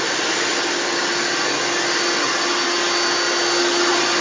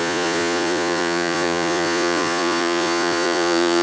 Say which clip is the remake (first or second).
second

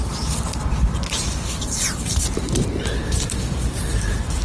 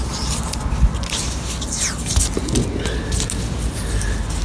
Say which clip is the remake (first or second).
first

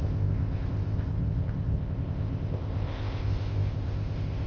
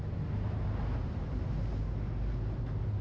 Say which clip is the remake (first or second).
first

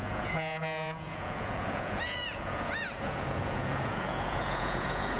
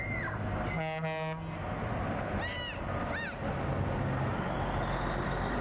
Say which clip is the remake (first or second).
first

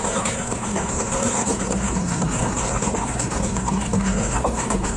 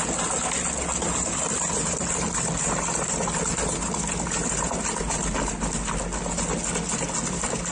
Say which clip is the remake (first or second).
first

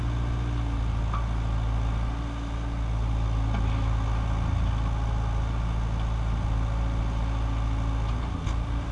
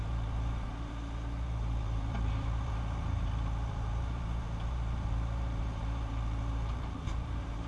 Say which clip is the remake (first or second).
second